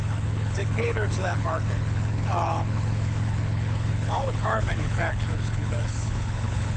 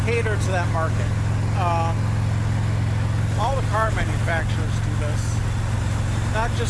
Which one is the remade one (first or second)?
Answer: first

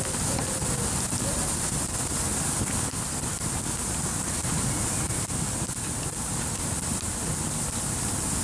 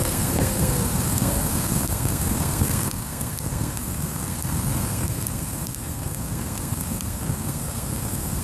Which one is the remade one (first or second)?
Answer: second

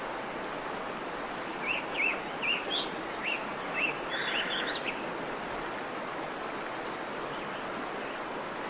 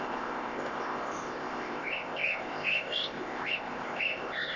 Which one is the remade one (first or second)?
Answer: second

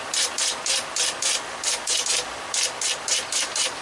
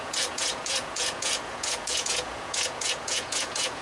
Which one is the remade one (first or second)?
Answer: second